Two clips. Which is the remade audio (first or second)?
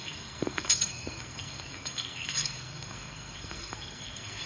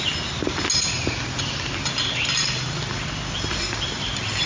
first